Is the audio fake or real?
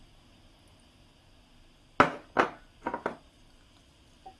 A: real